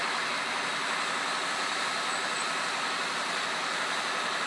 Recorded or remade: recorded